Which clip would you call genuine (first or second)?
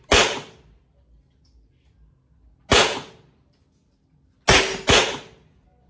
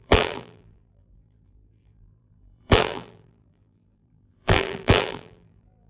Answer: first